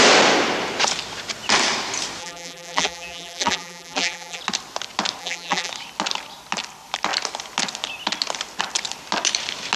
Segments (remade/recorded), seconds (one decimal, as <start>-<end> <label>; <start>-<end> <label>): 0.0-2.2 recorded; 2.2-4.4 remade; 4.4-5.2 recorded; 5.2-5.7 remade; 5.7-9.8 recorded